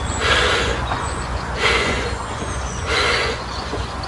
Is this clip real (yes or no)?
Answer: no